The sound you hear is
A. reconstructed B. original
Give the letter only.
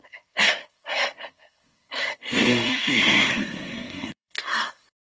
A